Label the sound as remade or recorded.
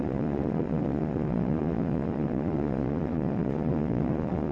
remade